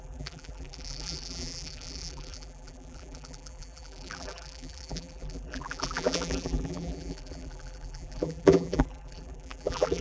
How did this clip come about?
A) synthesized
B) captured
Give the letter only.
A